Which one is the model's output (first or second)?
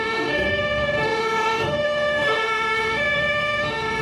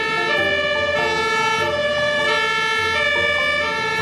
first